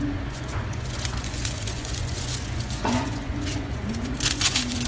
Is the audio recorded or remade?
remade